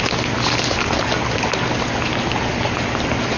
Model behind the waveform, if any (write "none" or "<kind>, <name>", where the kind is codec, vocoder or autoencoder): none